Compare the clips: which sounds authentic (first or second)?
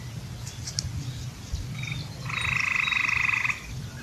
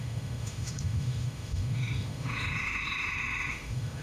first